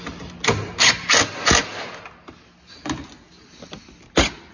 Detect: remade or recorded recorded